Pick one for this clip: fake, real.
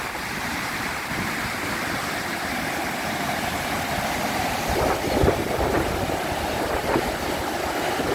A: real